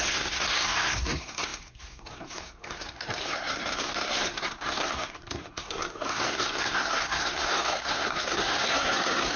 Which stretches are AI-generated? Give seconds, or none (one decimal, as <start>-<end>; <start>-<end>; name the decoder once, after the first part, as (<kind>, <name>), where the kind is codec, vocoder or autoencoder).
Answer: 0.0-9.4 (codec, SNAC)